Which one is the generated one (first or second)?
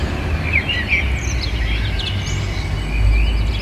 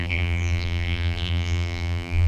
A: second